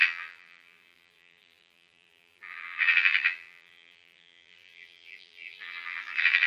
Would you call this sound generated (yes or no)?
yes